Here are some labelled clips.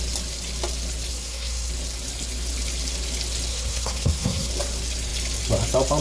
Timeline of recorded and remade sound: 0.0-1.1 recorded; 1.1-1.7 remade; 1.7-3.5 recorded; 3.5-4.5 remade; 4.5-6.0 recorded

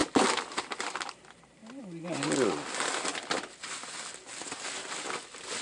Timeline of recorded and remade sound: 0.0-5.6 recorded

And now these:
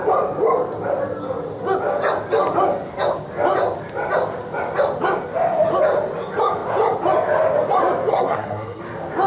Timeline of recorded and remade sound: 0.0-8.1 recorded; 8.1-8.8 remade; 8.8-9.3 recorded